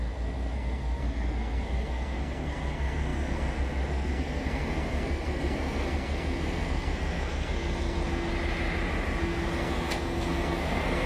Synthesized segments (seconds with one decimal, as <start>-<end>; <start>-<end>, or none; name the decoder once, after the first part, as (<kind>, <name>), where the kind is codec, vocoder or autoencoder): 0.0-8.3 (codec, SNAC); 9.2-11.1